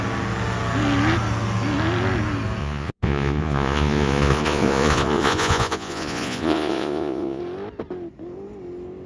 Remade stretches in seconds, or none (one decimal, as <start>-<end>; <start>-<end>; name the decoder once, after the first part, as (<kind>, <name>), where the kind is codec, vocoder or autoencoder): 2.6-7.4 (vocoder, Vocos)